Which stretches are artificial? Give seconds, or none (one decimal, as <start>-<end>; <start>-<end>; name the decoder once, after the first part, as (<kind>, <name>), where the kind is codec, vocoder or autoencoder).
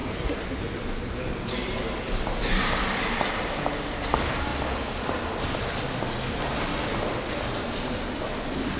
0.0-0.6 (codec, SNAC)